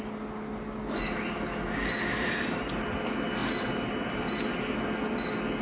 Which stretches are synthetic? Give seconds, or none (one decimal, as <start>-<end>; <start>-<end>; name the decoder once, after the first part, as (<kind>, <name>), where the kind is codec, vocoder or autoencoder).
2.2-2.7 (vocoder, BigVGAN v2); 3.4-4.5